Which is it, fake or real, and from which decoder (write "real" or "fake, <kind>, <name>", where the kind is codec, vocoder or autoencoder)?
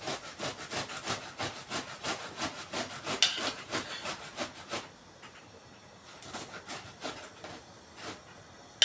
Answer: real